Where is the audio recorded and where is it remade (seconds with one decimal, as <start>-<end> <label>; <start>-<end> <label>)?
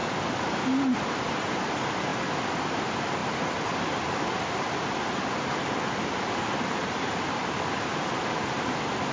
0.0-1.5 remade; 1.5-2.1 recorded; 2.1-2.8 remade; 2.8-9.1 recorded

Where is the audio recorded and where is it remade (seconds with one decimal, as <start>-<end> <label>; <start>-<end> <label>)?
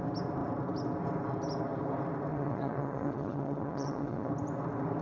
0.0-2.3 recorded; 2.3-4.3 remade; 4.3-5.0 recorded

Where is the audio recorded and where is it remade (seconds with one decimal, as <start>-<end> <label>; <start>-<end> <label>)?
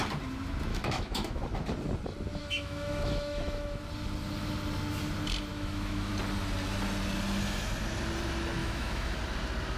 0.0-0.7 recorded; 0.7-1.4 remade; 1.4-2.4 recorded; 2.4-3.8 remade; 3.8-5.5 recorded; 5.5-6.1 remade; 6.1-8.6 recorded; 8.6-9.2 remade; 9.2-9.8 recorded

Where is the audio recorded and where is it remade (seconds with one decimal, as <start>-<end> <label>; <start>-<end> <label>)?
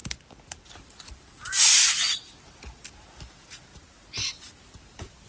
0.0-5.3 recorded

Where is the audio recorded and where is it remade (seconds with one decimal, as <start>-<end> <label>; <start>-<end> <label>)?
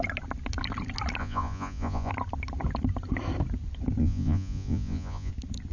0.0-1.2 recorded; 1.2-2.1 remade; 2.1-4.0 recorded; 4.0-5.3 remade; 5.3-5.7 recorded